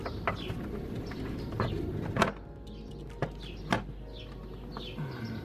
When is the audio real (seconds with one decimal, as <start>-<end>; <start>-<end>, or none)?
0.0-5.4